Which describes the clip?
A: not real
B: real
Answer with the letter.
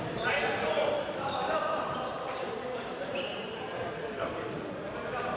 A